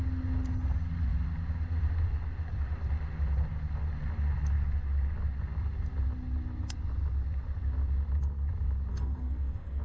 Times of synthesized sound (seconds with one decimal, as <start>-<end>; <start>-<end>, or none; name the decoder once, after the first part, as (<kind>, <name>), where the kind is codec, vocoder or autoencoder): 8.9-9.8 (codec, SNAC)